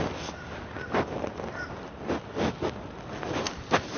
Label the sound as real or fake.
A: real